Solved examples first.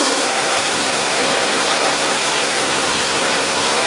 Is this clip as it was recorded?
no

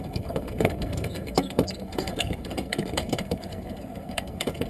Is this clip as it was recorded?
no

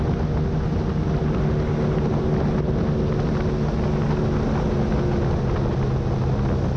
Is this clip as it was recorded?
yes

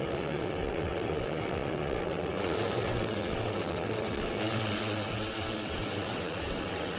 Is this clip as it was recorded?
no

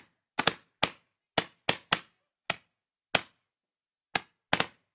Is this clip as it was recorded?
yes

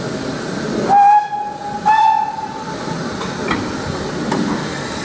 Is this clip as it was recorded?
yes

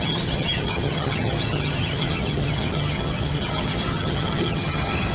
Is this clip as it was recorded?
no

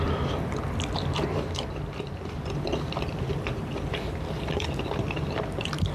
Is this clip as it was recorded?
no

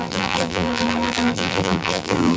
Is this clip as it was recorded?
no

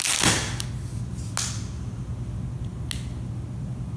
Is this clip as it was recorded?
yes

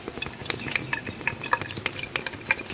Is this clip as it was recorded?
yes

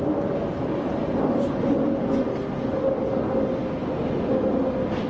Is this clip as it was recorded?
yes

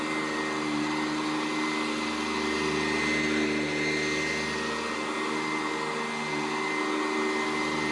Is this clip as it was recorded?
yes